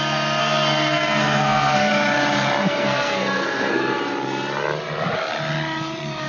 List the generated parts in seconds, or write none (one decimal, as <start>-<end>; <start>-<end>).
0.4-1.9; 2.6-4.0